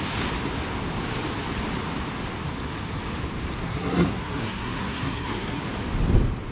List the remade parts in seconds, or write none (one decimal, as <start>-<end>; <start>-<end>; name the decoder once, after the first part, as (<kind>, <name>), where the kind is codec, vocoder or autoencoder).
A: 3.6-5.6 (codec, SNAC)